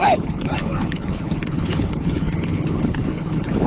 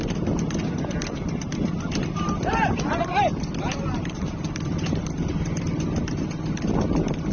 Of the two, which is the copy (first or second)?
first